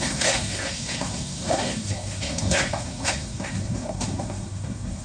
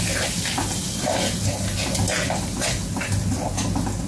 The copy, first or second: first